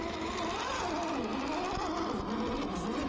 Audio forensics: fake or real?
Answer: real